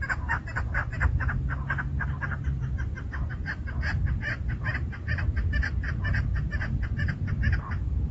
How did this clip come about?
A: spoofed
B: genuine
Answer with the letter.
B